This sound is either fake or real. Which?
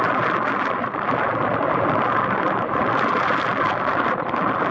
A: real